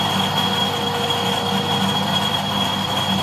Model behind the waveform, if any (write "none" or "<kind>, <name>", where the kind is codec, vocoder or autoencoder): none